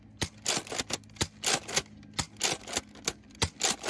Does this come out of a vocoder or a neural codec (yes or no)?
no